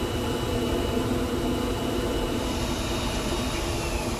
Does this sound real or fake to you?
real